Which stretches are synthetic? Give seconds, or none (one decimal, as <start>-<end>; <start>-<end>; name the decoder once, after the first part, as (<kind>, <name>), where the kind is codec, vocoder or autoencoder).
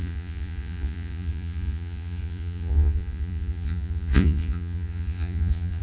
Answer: 0.0-5.8 (vocoder, Vocos)